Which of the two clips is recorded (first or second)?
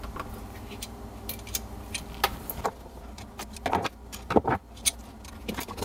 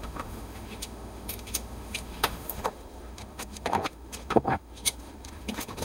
first